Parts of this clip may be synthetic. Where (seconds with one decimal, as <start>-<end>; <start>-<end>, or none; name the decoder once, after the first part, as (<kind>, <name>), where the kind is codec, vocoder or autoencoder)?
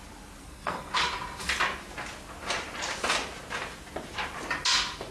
0.4-1.0 (codec, SNAC)